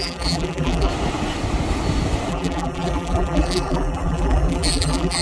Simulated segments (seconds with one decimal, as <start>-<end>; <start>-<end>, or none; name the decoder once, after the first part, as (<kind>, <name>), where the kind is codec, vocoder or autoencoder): 0.0-0.9 (vocoder, BigVGAN v2); 2.3-5.2